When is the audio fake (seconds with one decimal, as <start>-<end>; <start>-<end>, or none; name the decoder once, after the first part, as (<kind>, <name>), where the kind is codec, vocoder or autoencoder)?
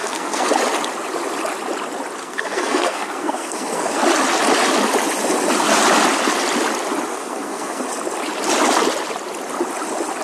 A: 0.0-0.5 (codec, SNAC); 2.2-4.0; 7.1-7.8